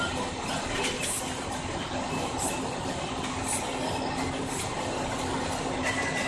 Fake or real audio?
real